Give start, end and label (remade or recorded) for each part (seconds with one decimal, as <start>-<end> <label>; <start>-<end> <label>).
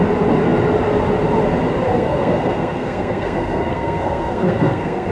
0.0-1.9 recorded; 1.9-5.1 remade